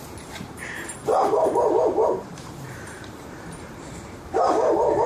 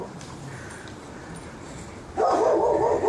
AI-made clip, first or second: first